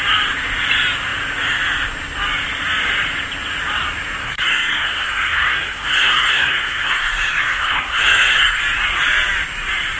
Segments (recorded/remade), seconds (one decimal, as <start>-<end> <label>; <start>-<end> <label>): 0.0-4.2 recorded; 4.2-8.6 remade; 8.6-10.0 recorded